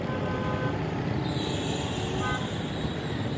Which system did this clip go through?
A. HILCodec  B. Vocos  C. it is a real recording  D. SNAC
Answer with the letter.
C